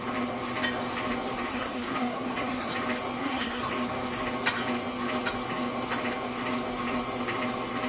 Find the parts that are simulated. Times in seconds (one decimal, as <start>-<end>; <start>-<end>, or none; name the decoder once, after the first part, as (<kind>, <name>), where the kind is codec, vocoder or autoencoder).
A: 1.5-2.7 (codec, SNAC); 3.2-3.7